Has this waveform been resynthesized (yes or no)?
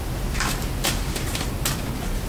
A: no